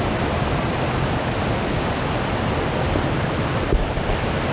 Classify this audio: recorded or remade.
recorded